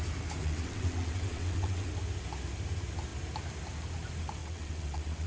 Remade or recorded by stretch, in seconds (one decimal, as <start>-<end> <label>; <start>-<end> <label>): 0.0-0.4 recorded; 0.4-1.9 remade; 1.9-4.4 recorded; 4.4-5.3 remade